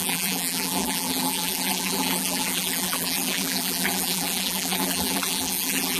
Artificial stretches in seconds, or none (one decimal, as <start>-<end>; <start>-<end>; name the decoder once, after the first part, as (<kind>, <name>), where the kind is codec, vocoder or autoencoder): 0.0-6.0 (vocoder, BigVGAN v2)